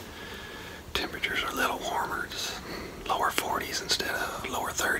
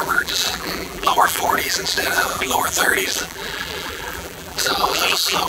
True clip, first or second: first